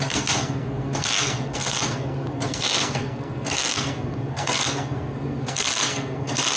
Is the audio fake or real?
fake